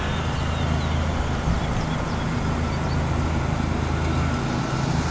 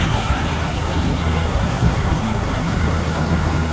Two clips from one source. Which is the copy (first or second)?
second